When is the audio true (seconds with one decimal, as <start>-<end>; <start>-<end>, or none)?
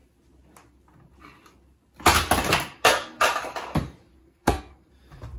0.0-4.2; 4.9-5.4